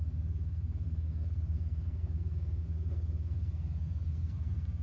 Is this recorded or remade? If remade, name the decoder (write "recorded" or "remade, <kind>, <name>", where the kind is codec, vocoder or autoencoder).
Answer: remade, codec, SNAC